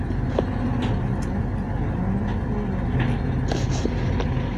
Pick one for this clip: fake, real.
real